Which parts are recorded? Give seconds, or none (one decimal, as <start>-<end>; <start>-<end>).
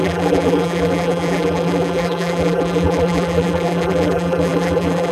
none